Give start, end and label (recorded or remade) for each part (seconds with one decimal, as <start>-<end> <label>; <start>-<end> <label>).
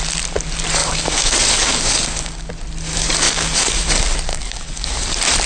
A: 0.0-0.8 recorded; 0.8-2.5 remade; 2.5-2.9 recorded; 2.9-3.9 remade; 3.9-4.3 recorded; 4.3-5.1 remade; 5.1-5.5 recorded